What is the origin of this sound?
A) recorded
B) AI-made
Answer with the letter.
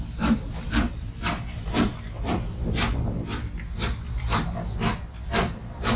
A